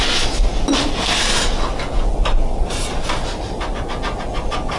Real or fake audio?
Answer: real